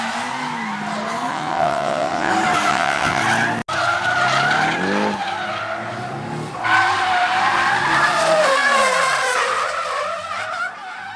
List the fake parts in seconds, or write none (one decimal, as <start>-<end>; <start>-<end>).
1.3-2.3; 2.7-3.2